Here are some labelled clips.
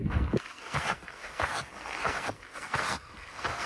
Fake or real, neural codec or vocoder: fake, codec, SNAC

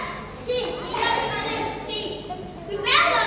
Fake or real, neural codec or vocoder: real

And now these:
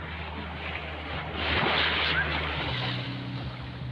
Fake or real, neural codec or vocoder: real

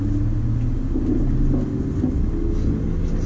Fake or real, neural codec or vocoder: real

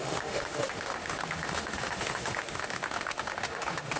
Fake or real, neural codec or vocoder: fake, autoencoder, DAC-VAE